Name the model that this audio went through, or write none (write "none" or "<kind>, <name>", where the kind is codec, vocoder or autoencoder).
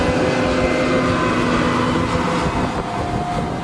none